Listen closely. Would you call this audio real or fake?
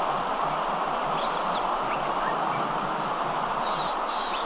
real